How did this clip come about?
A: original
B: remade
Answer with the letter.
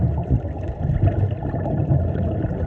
A